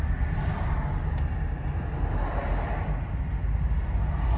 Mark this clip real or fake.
real